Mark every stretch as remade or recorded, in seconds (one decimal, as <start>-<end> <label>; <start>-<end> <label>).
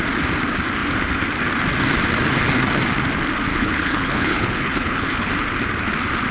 0.0-3.5 recorded; 3.5-5.3 remade; 5.3-6.3 recorded